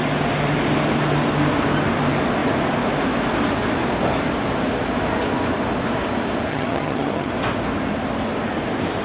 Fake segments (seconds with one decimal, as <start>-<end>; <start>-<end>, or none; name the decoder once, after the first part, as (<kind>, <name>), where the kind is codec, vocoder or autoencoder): 6.5-7.3 (vocoder, HiFi-GAN)